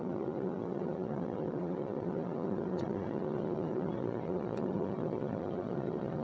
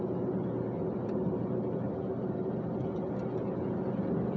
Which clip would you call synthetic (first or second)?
first